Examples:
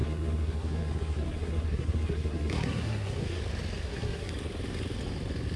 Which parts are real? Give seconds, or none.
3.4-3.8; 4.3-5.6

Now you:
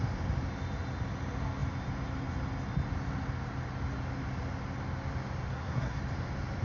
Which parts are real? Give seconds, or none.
0.0-5.5; 6.0-6.6